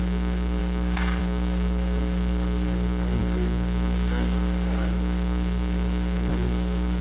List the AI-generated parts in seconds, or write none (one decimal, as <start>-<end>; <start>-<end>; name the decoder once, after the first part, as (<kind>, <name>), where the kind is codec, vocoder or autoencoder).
0.0-7.0 (codec, SNAC)